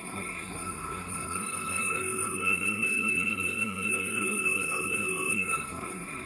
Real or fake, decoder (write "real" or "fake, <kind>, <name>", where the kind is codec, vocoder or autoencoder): fake, codec, SNAC